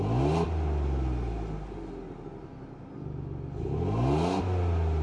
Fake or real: real